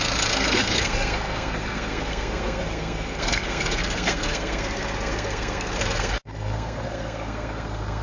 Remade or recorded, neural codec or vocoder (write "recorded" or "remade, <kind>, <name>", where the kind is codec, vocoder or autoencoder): remade, codec, SNAC